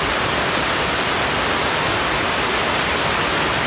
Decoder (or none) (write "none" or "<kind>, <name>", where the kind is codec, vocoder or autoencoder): none